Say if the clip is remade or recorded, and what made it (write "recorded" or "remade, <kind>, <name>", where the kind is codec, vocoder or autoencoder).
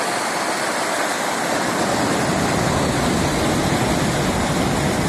recorded